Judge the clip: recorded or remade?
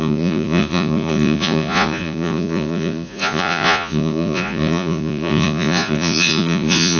remade